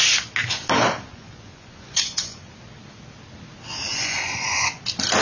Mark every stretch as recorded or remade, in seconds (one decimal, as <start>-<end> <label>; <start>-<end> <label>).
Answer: 0.0-1.1 recorded; 1.1-2.5 remade; 2.5-3.9 recorded; 3.9-4.8 remade; 4.8-5.2 recorded